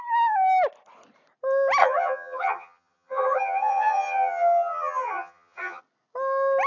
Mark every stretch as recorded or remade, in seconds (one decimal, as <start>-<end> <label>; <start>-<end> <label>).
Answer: 0.0-1.8 recorded; 1.8-5.8 remade; 5.8-6.7 recorded